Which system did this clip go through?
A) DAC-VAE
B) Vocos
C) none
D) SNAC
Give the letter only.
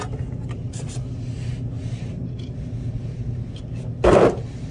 C